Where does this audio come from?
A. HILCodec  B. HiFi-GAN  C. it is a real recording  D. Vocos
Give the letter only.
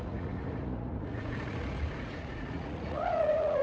D